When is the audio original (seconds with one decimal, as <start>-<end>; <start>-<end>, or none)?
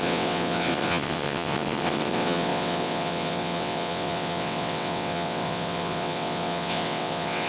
none